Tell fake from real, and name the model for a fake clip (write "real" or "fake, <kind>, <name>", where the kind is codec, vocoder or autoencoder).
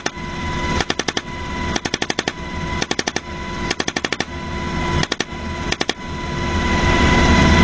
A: real